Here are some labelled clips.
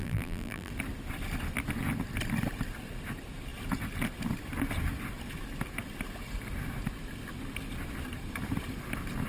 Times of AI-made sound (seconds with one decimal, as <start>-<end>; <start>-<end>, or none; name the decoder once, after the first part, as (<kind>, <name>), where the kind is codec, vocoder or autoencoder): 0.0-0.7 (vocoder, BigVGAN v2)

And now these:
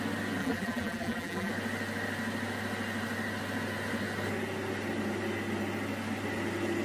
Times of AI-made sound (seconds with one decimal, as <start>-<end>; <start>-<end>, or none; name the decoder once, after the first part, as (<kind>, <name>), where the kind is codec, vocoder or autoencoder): 0.4-1.5 (vocoder, BigVGAN v2)

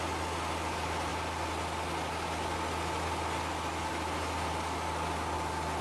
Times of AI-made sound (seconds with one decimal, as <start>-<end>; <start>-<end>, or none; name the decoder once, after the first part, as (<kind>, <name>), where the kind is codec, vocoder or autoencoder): none

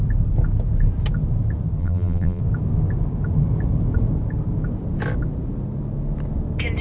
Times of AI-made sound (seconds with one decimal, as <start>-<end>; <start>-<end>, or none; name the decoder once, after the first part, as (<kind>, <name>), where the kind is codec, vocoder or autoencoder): 1.8-2.4 (vocoder, BigVGAN v2)